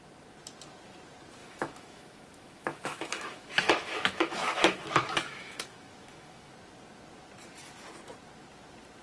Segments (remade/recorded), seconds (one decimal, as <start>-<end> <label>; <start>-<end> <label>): 0.0-1.4 recorded; 1.4-6.5 remade; 6.5-9.0 recorded